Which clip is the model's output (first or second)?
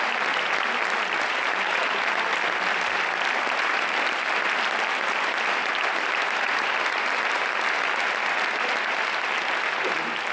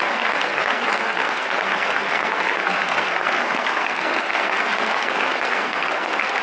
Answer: second